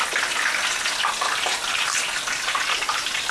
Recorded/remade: recorded